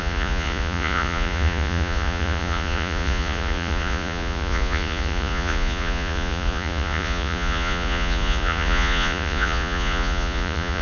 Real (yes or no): no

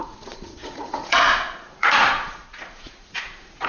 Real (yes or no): no